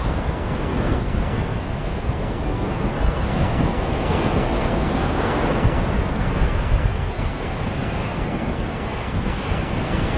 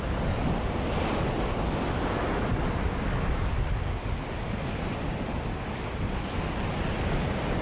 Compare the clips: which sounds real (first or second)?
second